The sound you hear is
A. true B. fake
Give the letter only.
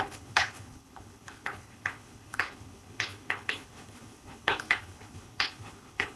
B